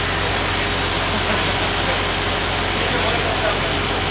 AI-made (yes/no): no